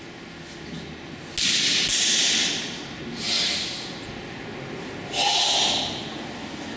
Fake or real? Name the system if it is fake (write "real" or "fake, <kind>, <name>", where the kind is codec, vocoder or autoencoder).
real